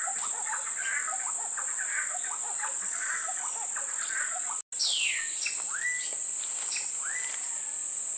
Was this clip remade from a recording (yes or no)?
no